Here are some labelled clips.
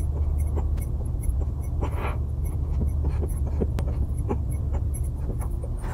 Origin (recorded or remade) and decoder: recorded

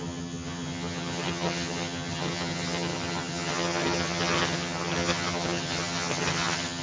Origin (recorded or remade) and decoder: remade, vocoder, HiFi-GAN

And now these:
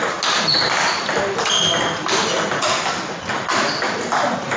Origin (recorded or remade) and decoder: recorded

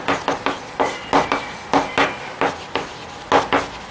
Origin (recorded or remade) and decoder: recorded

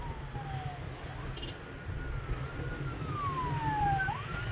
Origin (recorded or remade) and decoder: recorded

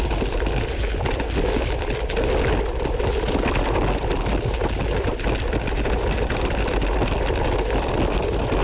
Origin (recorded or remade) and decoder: recorded